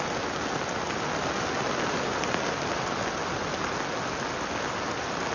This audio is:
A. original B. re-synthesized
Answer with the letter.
A